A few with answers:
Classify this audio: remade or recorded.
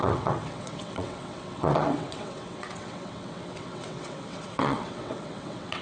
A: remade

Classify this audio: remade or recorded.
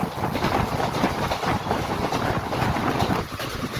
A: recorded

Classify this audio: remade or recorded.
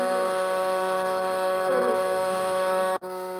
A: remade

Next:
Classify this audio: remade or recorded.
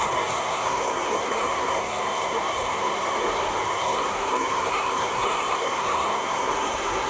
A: remade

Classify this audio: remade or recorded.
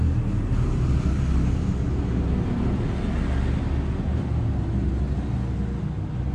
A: recorded